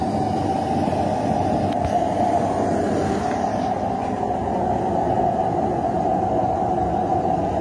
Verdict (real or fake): real